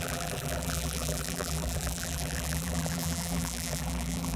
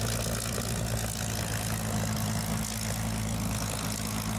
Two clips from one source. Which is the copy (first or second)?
first